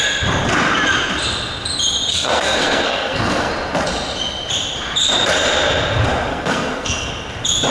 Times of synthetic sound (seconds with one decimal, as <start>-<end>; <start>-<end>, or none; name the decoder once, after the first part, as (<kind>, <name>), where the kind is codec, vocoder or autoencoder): 2.1-3.5 (codec, SNAC); 6.3-7.1

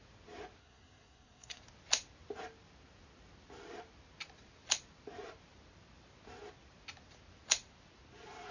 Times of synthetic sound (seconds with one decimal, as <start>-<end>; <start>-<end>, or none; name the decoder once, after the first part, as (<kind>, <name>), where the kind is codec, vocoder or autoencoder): 0.6-1.6 (codec, SNAC)

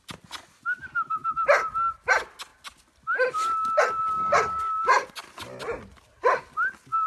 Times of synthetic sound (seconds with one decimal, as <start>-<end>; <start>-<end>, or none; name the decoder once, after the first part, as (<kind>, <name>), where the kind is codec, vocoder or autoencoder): none

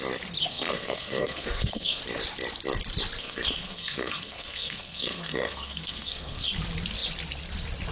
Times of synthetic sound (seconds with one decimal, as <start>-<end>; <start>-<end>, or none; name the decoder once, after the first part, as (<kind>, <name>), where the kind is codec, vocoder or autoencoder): 0.5-2.0 (codec, SNAC); 3.2-6.5